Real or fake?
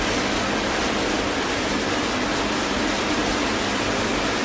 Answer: real